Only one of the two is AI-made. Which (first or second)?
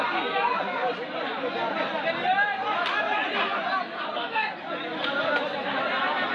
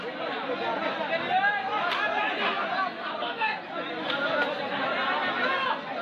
first